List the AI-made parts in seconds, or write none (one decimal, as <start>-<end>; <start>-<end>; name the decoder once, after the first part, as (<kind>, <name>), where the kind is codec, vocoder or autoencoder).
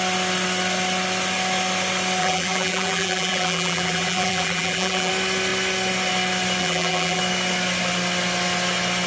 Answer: 2.2-5.1 (vocoder, BigVGAN v2); 6.6-7.2